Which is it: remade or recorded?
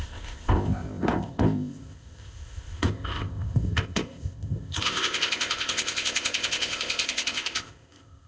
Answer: remade